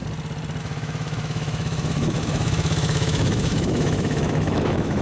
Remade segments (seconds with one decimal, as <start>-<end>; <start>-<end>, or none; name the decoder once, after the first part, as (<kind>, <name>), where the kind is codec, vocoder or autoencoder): 0.6-5.0 (autoencoder, DAC-VAE)